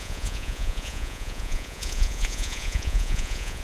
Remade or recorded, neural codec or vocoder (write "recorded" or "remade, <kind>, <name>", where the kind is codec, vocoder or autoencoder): remade, vocoder, Vocos